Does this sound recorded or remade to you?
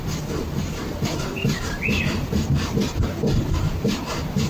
remade